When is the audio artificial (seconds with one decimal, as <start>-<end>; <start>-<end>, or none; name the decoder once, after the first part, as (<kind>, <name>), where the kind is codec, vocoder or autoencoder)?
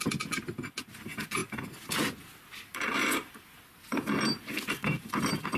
none